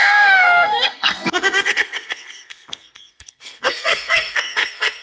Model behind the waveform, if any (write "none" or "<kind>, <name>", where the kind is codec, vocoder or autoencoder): codec, SNAC